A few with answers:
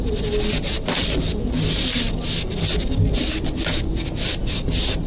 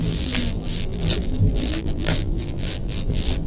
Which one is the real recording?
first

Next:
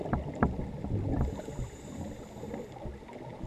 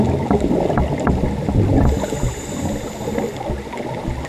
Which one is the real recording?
second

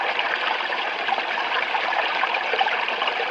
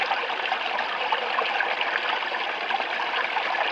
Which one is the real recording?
second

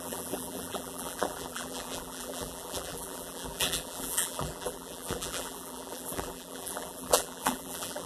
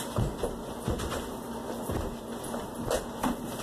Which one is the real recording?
second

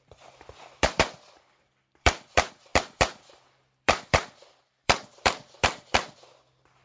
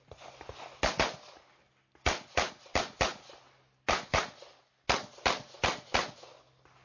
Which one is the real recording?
second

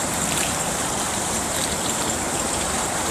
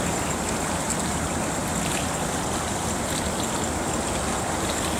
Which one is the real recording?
second